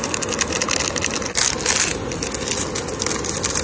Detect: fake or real real